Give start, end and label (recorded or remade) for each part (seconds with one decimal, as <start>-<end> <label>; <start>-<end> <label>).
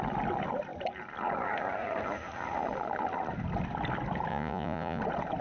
0.0-4.3 recorded; 4.3-5.0 remade; 5.0-5.4 recorded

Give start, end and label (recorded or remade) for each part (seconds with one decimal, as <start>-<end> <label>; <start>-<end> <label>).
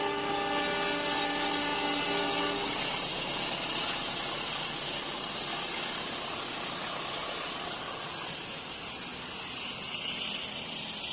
0.0-11.1 recorded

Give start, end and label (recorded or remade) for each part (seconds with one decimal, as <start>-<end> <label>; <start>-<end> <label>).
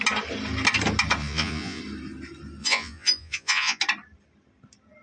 0.0-1.2 recorded; 1.2-1.8 remade; 1.8-2.6 recorded; 2.6-3.8 remade; 3.8-5.0 recorded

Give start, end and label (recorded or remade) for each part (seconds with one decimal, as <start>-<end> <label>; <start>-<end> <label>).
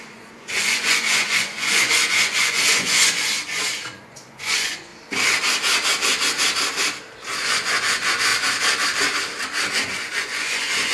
0.0-4.9 remade; 4.9-7.4 recorded; 7.4-8.3 remade; 8.3-9.7 recorded; 9.7-10.9 remade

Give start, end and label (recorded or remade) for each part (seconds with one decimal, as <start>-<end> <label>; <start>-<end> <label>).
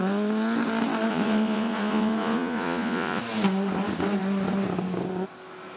0.0-1.1 recorded; 1.1-3.2 remade; 3.2-5.8 recorded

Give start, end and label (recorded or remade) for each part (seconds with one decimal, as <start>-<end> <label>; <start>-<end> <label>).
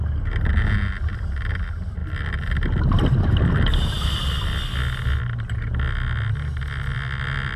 0.0-7.6 recorded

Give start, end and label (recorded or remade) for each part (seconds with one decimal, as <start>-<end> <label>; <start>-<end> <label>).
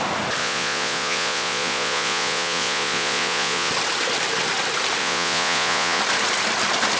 0.0-0.4 recorded; 0.4-3.7 remade; 3.7-5.0 recorded; 5.0-6.0 remade; 6.0-7.0 recorded